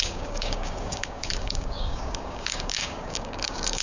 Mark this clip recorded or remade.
remade